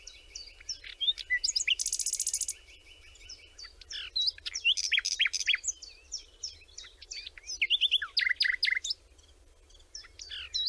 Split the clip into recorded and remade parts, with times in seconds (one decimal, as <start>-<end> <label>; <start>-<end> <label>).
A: 0.0-10.7 recorded